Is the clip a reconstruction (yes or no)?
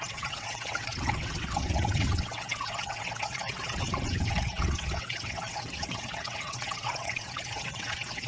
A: yes